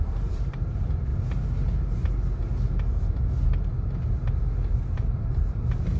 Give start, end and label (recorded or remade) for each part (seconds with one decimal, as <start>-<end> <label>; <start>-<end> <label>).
0.0-1.1 remade; 1.1-4.7 recorded; 4.7-6.0 remade